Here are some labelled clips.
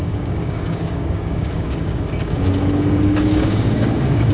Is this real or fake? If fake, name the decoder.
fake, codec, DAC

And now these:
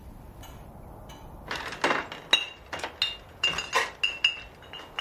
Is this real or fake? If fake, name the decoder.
real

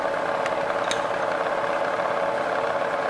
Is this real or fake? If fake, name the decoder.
real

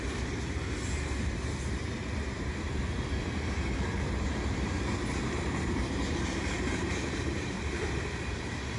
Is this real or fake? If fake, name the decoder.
fake, vocoder, BigVGAN v2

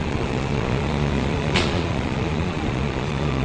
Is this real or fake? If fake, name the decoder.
fake, vocoder, Vocos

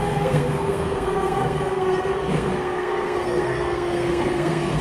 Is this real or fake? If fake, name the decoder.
fake, codec, SNAC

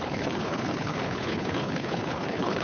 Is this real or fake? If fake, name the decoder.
fake, codec, HILCodec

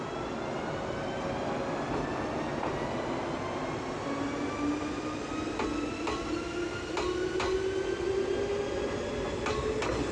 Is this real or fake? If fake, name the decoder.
real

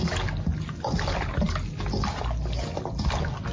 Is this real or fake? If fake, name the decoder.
real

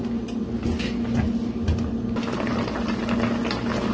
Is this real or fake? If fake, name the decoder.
real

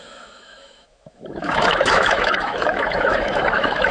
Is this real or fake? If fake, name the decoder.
fake, autoencoder, DAC-VAE